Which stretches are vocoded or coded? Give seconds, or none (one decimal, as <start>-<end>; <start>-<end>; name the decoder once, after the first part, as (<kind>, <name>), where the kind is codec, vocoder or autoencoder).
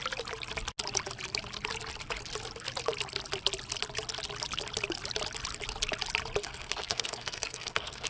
6.4-8.1 (codec, SNAC)